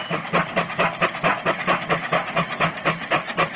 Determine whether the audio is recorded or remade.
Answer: recorded